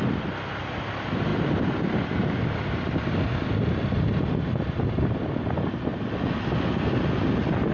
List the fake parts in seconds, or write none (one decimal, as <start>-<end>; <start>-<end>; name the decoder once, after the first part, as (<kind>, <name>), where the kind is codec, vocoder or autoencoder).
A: none